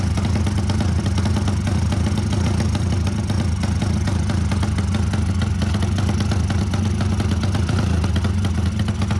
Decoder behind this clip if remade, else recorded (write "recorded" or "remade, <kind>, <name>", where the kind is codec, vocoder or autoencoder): recorded